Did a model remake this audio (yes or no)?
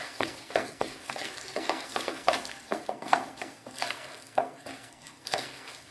yes